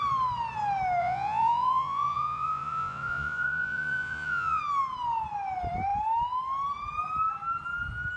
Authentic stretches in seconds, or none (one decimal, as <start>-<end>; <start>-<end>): 0.0-1.0; 4.6-8.2